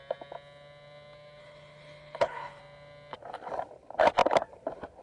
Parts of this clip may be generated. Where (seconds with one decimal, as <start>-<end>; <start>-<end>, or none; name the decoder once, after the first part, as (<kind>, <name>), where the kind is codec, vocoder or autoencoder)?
1.4-2.6 (codec, HILCodec)